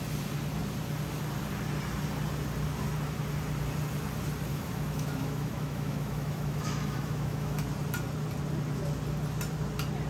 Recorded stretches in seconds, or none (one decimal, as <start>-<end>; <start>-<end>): 0.0-4.5; 7.6-10.1